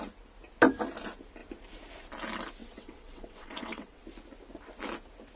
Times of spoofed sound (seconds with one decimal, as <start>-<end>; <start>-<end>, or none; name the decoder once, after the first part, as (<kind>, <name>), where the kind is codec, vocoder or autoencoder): 2.6-4.0 (vocoder, WaveNeXt)